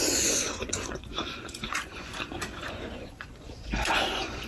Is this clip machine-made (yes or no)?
yes